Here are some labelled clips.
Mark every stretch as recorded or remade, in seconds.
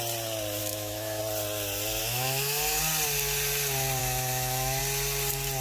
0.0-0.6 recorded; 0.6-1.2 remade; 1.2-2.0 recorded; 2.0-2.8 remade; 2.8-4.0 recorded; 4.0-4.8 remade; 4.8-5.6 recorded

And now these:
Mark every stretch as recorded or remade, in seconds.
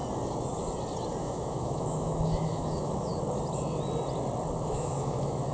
0.0-1.2 recorded; 1.2-3.1 remade; 3.1-4.6 recorded; 4.6-5.5 remade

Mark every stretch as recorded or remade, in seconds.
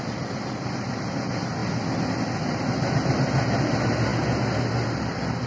0.0-5.5 recorded